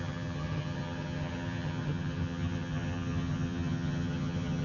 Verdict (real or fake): fake